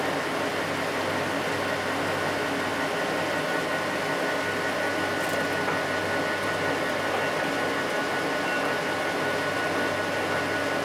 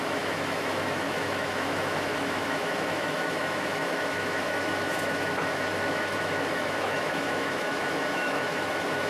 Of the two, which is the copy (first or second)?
second